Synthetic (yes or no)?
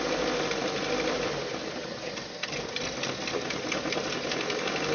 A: no